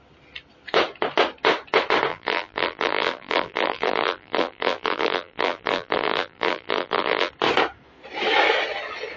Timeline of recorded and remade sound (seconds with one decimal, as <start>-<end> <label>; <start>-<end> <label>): 0.0-2.1 recorded; 2.1-7.3 remade; 7.3-9.2 recorded